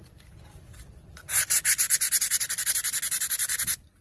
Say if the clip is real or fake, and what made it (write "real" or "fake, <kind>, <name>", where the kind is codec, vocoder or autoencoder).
real